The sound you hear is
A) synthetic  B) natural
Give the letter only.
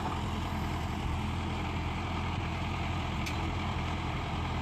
A